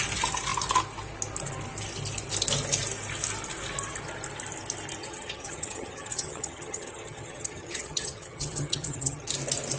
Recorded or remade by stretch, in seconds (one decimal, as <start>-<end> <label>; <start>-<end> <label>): 0.0-5.0 recorded; 5.0-9.3 remade; 9.3-9.8 recorded